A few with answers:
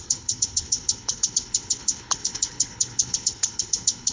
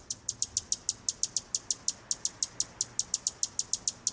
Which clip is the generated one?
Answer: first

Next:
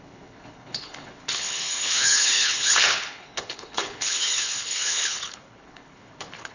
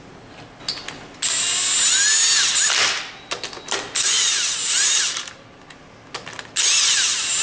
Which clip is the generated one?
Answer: first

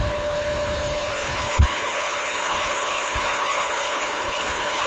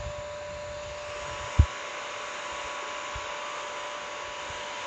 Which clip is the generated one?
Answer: first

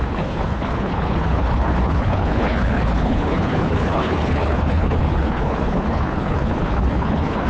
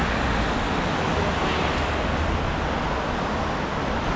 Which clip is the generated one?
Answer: first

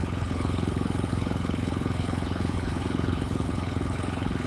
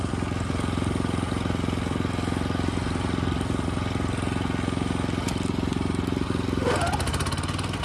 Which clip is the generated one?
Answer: first